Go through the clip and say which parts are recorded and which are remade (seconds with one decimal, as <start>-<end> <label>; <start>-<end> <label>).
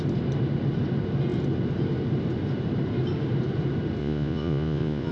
0.0-4.0 recorded; 4.0-5.1 remade